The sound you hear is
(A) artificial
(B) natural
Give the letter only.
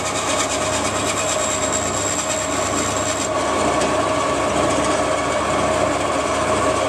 B